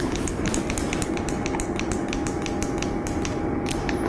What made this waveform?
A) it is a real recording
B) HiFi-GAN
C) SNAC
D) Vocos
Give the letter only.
A